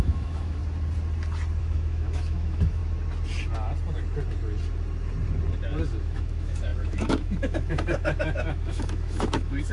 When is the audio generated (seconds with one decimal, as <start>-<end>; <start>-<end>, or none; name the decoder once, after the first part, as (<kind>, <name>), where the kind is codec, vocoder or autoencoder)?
0.0-0.6 (autoencoder, DAC-VAE); 1.6-2.8; 6.0-9.7